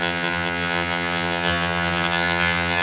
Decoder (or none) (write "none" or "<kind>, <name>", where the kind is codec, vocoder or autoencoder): vocoder, HiFi-GAN